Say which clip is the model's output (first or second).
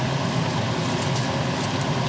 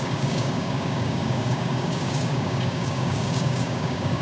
second